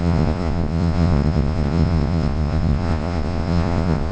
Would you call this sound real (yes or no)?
no